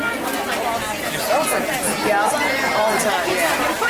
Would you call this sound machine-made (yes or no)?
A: no